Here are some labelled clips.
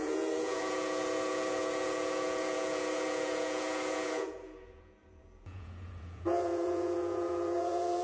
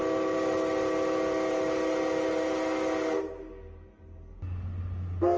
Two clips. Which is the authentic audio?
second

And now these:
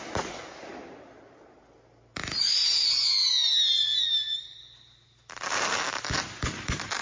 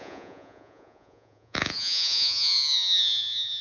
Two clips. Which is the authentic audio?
first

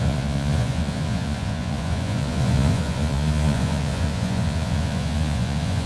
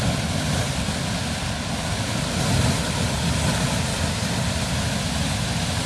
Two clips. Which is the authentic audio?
second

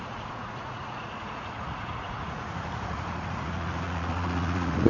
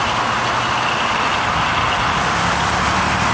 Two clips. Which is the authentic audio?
second